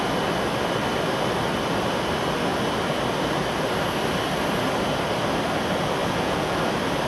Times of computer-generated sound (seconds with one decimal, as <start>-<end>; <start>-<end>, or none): 6.0-6.6